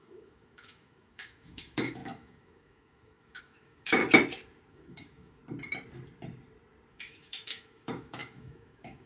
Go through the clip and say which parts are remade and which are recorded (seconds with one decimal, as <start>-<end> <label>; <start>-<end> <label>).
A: 0.0-4.0 remade; 4.0-4.7 recorded; 4.7-5.4 remade; 5.4-6.9 recorded; 6.9-9.1 remade